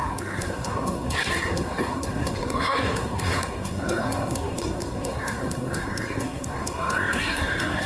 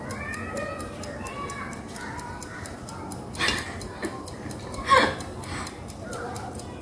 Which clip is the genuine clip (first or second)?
second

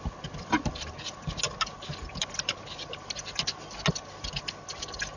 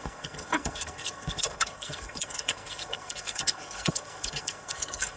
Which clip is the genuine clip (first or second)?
first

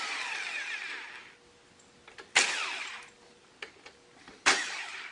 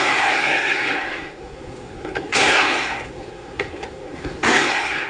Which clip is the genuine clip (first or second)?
first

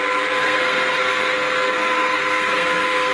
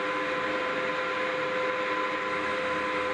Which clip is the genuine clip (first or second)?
second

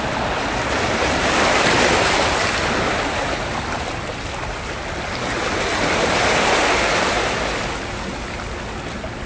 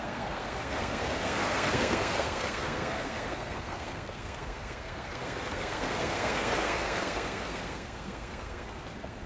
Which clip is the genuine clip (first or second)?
first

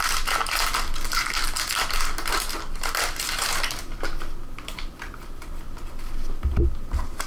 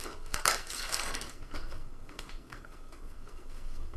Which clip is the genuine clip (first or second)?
first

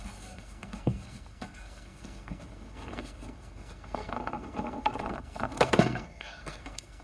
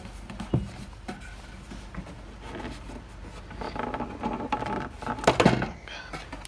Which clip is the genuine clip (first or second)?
second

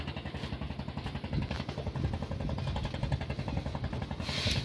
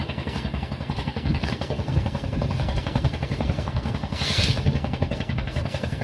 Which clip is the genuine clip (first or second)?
first